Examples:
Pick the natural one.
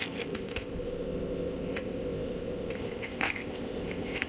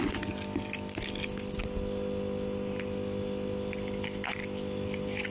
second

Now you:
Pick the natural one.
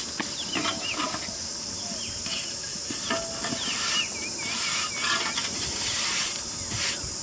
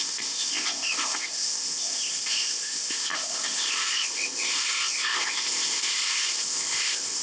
first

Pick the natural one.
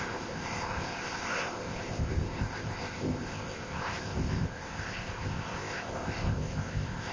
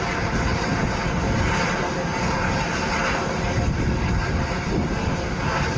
second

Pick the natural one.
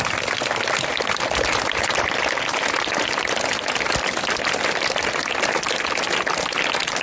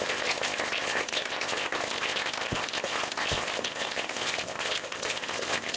first